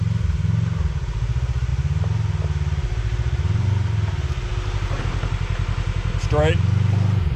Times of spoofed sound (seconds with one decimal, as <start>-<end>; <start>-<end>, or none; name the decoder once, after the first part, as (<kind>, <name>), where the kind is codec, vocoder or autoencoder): none